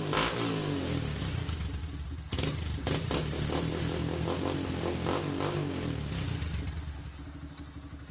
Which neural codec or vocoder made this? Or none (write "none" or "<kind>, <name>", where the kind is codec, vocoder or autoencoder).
none